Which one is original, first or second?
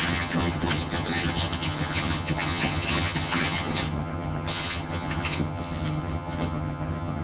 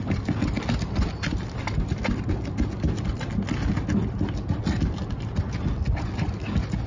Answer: second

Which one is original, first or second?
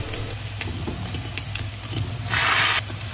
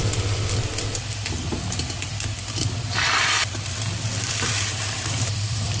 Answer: first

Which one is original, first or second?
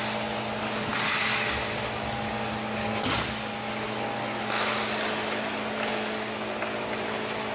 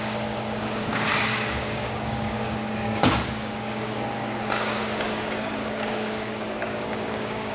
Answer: first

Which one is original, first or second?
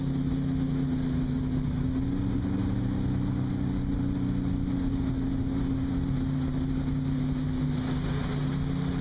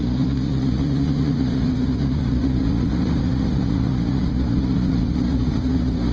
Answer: first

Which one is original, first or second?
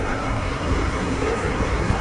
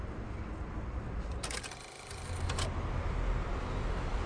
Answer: second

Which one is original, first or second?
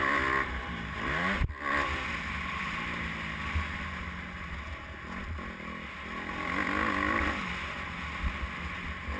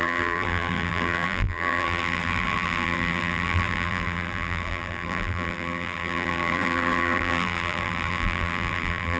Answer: first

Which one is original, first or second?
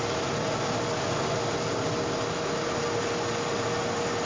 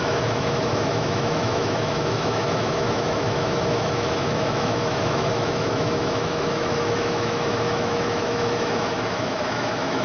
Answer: first